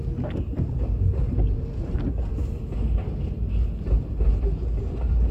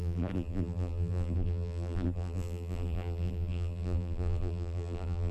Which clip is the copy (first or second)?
second